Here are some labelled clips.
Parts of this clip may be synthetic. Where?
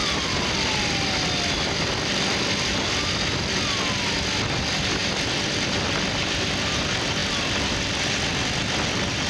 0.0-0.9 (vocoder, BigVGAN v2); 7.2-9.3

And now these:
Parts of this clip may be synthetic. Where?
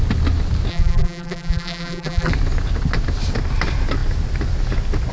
0.7-2.3 (vocoder, BigVGAN v2)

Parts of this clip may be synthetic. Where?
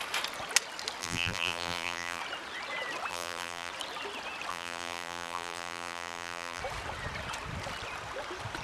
1.0-2.2 (vocoder, BigVGAN v2); 3.1-3.7; 4.5-6.6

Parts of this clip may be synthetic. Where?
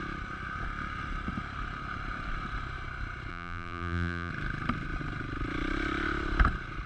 3.3-4.3 (vocoder, BigVGAN v2)